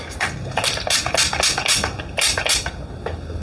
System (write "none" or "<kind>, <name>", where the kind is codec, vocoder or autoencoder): none